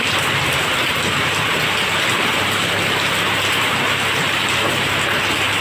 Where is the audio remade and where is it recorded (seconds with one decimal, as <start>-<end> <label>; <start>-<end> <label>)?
0.0-0.7 recorded; 0.7-4.1 remade; 4.1-5.6 recorded